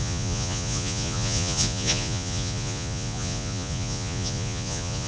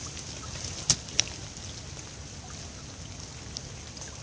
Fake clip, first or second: first